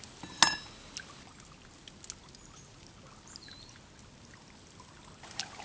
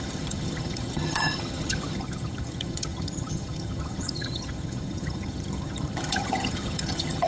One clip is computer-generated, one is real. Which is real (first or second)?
first